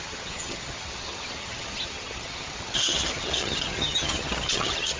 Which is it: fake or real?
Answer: fake